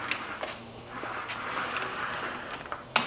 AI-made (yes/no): no